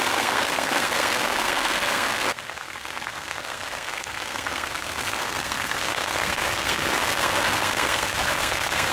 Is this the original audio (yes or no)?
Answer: no